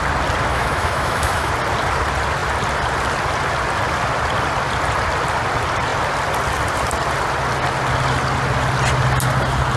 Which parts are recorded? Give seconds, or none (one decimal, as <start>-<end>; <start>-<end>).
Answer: 0.0-0.5; 1.5-9.8